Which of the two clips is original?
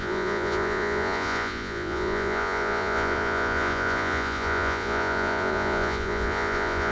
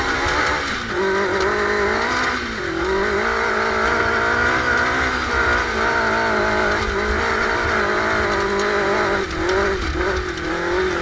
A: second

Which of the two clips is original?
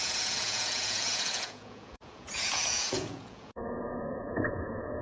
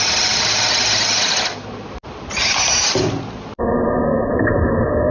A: second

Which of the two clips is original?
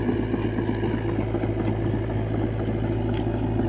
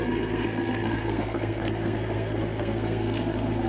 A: first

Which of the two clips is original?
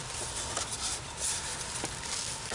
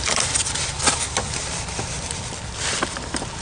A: first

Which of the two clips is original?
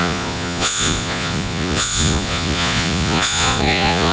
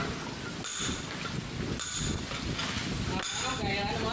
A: second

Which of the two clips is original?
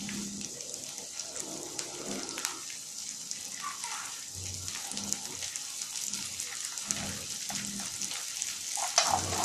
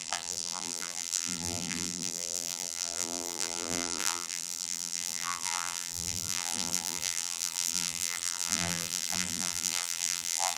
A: first